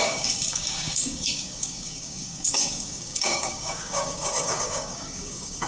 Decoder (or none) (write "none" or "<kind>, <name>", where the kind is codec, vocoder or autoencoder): codec, DAC